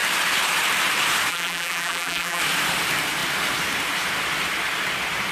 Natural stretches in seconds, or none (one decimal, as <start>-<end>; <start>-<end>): 0.0-1.3; 2.4-5.3